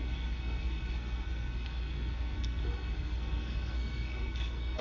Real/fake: fake